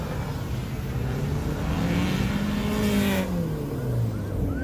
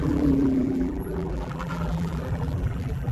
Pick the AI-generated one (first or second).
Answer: second